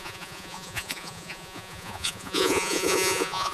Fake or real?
fake